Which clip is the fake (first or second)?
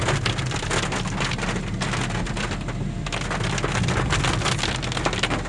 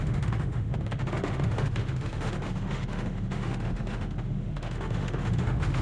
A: second